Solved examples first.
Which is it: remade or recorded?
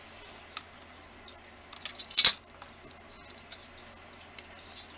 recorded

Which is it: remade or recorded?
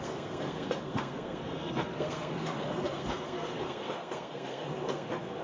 remade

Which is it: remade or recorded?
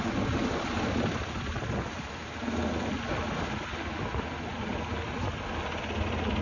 recorded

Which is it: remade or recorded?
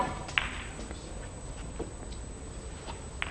recorded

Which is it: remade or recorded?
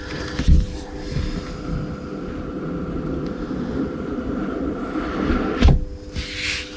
recorded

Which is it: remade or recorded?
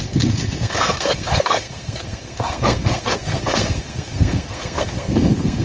remade